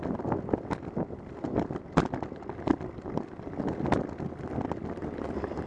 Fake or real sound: real